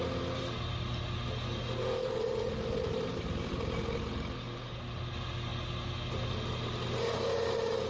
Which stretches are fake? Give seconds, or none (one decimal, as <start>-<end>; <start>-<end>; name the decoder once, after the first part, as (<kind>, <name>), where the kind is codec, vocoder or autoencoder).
none